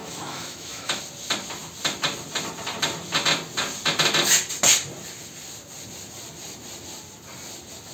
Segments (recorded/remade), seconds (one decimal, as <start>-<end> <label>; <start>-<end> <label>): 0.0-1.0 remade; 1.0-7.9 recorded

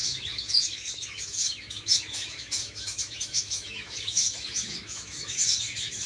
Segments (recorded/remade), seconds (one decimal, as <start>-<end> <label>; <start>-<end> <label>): 0.0-6.1 remade

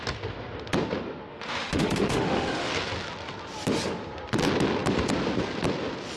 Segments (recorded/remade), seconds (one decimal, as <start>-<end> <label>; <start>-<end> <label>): 0.0-1.3 recorded; 1.3-2.7 remade; 2.7-6.2 recorded

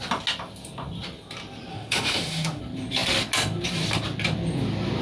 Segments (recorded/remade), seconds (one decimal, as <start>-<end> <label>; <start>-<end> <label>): 0.0-1.7 recorded; 1.7-2.6 remade; 2.6-5.0 recorded